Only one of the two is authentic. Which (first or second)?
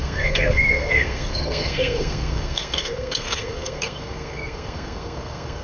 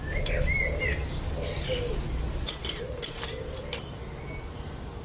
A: second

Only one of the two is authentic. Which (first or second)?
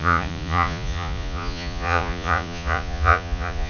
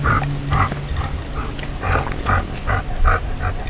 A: second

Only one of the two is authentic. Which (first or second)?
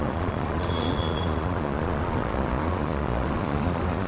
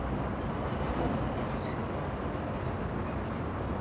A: second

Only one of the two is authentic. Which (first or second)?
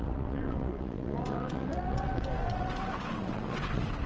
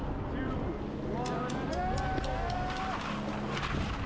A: second